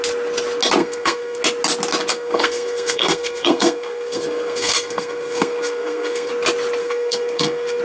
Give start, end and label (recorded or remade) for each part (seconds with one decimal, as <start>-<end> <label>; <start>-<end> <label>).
0.0-0.8 recorded; 0.8-1.4 remade; 1.4-2.1 recorded; 2.1-6.3 remade; 6.3-6.8 recorded; 6.8-7.8 remade